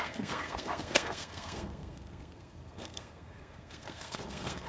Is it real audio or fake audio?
fake